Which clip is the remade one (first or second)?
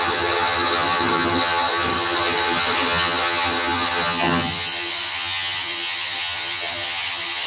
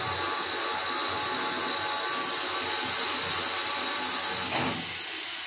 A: first